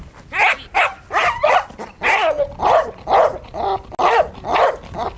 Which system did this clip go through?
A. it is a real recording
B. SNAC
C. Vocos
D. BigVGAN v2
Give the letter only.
A